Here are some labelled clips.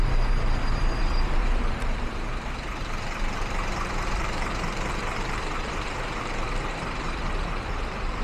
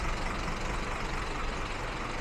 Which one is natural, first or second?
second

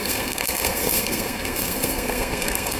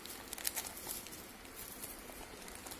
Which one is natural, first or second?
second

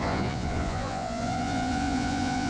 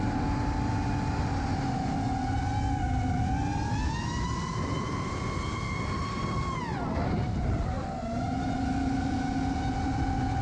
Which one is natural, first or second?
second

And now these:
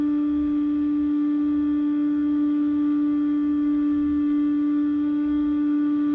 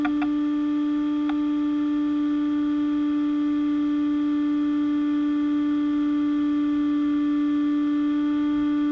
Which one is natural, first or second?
second